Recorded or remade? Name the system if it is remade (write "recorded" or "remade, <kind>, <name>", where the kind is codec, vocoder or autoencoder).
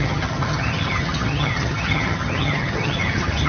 remade, vocoder, HiFi-GAN